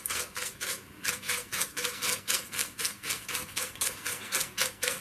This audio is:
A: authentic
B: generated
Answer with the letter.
B